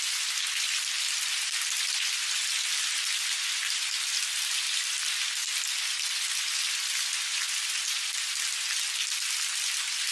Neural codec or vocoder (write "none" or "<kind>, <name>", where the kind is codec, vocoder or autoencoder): none